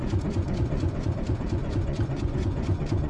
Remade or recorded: remade